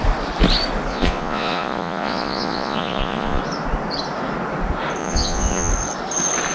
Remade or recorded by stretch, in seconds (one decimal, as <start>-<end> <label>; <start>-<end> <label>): 0.0-0.9 recorded; 0.9-3.4 remade; 3.4-5.0 recorded; 5.0-5.7 remade; 5.7-6.5 recorded